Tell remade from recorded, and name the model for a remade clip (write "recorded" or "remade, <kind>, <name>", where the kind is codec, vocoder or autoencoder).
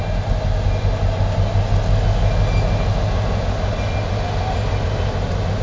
recorded